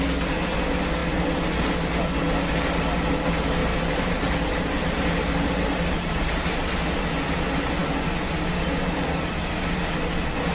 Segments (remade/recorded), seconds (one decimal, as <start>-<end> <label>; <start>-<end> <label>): 0.0-3.6 recorded; 3.6-7.0 remade; 7.0-10.5 recorded